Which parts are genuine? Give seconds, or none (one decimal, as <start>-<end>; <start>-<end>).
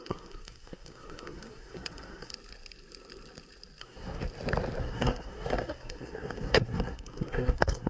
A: 2.3-3.8; 4.2-4.8